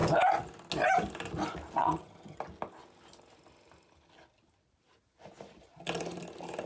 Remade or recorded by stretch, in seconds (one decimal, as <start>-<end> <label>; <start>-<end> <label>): 0.0-1.8 recorded; 1.8-2.4 remade; 2.4-6.7 recorded